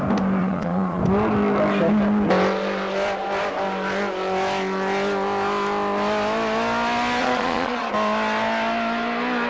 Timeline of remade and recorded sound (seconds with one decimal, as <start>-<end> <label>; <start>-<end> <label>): 0.0-0.4 recorded; 0.4-1.0 remade; 1.0-7.2 recorded; 7.2-7.9 remade; 7.9-9.5 recorded